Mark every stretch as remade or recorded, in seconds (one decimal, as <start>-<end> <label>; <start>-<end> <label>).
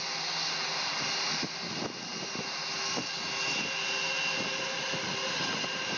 0.0-6.0 recorded